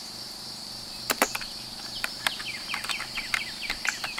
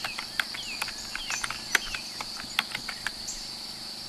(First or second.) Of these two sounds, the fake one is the first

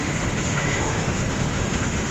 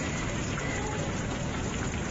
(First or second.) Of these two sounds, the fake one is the first